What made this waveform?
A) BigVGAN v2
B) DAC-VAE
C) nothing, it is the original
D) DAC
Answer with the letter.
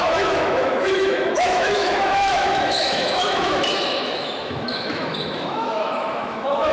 B